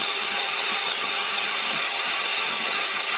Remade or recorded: remade